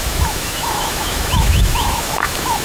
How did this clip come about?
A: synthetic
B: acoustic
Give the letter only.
A